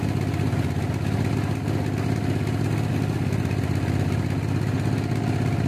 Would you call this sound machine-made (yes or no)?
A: no